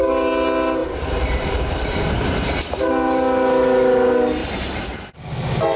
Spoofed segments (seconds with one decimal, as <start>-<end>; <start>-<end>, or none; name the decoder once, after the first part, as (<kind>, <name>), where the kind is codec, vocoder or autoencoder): 0.8-2.1 (vocoder, BigVGAN v2); 4.4-5.1